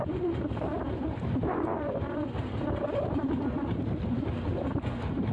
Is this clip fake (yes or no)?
yes